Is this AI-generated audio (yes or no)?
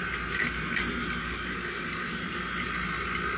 no